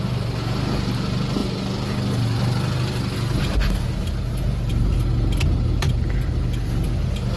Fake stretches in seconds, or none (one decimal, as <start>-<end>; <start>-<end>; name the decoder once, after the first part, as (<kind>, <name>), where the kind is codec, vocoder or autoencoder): none

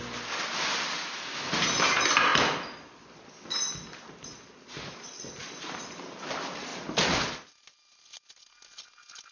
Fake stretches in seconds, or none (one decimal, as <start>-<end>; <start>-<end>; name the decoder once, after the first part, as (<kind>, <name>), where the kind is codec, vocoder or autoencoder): none